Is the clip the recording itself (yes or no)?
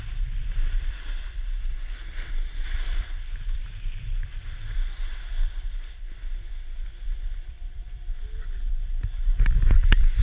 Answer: no